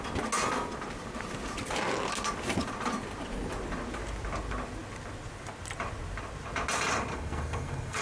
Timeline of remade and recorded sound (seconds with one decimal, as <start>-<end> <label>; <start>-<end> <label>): 0.0-7.1 recorded; 7.1-8.0 remade